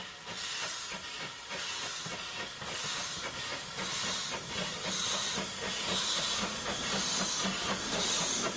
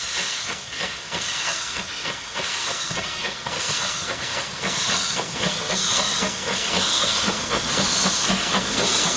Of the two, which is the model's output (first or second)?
second